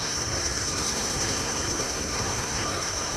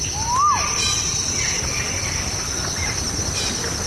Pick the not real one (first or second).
first